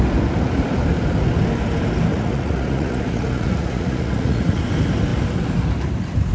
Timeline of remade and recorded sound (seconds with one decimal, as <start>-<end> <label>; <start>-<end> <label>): 0.0-2.1 recorded; 2.1-4.6 remade; 4.6-6.3 recorded